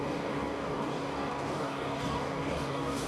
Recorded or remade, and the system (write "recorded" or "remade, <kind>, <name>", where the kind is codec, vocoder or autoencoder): remade, codec, DAC